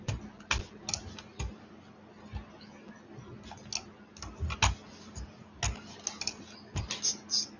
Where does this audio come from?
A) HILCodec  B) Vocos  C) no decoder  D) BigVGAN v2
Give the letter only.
C